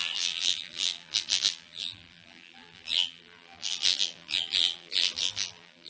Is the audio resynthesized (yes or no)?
yes